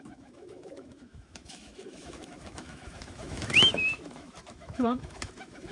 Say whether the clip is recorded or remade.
remade